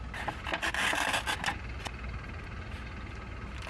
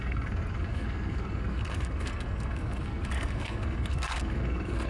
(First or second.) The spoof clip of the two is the second